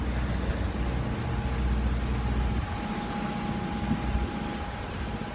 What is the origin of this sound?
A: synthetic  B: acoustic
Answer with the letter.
B